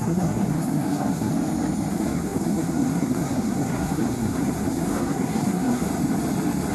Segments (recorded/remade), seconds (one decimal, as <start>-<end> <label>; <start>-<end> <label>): 0.0-1.3 remade; 1.3-1.9 recorded; 1.9-5.9 remade; 5.9-6.7 recorded